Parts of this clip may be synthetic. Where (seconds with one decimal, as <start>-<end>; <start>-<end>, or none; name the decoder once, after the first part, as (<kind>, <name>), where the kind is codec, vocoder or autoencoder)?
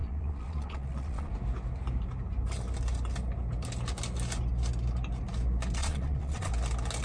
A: 0.0-1.3 (vocoder, Vocos); 5.8-6.5